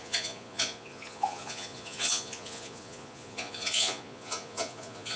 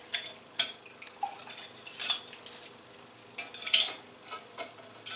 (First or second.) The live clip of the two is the second